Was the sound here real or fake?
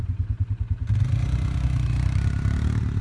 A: real